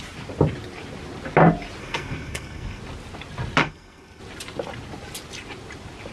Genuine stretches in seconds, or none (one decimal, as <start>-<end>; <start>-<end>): 0.0-1.8; 2.8-3.6; 4.2-6.1